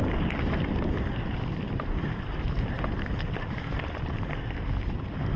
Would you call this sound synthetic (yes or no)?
yes